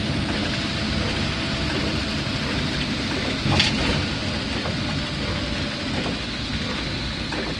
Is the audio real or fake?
real